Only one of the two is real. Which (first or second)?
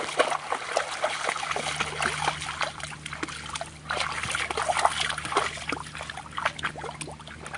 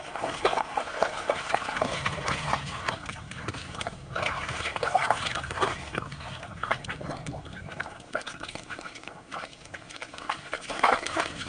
first